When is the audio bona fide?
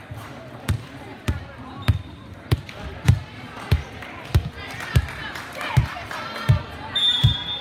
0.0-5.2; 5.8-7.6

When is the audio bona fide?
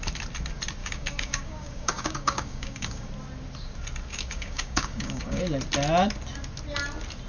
0.0-0.8; 3.1-4.1; 5.4-7.3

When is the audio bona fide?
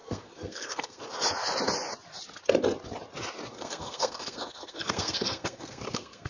1.0-3.5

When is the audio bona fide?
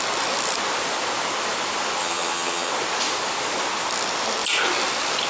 0.0-2.0; 2.7-5.3